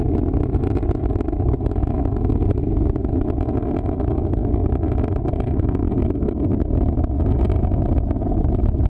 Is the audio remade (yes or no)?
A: no